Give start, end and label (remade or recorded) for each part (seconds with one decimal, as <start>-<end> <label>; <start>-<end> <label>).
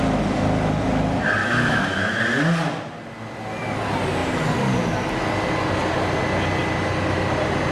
0.0-1.4 recorded; 1.4-2.2 remade; 2.2-7.7 recorded